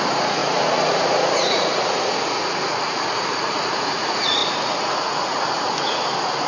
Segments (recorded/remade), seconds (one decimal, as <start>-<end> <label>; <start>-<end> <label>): 0.0-6.5 remade